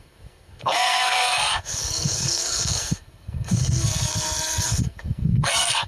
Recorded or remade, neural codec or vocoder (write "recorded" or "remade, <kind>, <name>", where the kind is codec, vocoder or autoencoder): remade, codec, SNAC